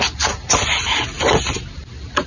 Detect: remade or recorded recorded